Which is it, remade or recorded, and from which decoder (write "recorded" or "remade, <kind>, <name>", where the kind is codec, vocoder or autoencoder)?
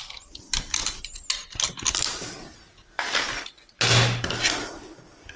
recorded